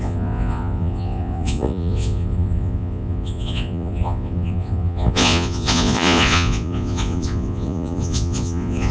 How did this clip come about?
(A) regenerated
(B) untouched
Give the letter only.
A